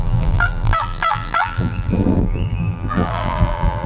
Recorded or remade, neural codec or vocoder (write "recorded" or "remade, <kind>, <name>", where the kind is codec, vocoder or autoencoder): remade, vocoder, BigVGAN v2